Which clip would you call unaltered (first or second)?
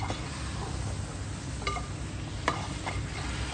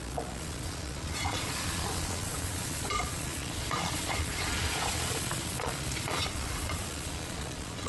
first